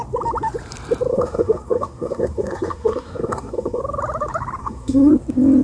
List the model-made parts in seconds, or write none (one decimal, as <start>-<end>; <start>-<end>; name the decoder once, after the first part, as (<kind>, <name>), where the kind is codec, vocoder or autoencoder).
1.1-3.8 (codec, SNAC); 4.6-5.1